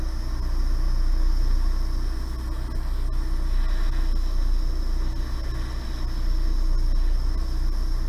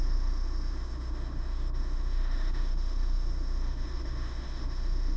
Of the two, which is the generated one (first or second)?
second